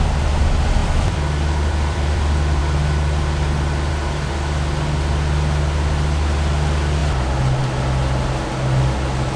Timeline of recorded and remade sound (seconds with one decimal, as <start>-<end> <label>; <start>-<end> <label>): 0.0-0.8 recorded; 0.8-2.2 remade; 2.2-9.4 recorded